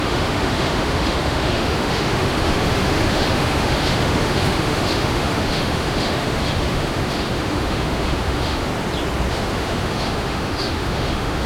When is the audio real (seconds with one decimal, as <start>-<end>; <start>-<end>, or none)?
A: 8.7-9.3